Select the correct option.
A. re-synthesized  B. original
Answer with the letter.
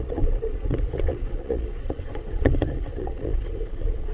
A